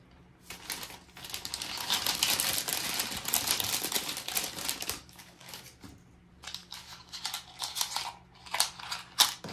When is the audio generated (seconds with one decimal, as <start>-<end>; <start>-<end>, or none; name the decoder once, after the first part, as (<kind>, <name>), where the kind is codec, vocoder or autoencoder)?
4.8-5.6 (codec, DAC); 6.6-7.2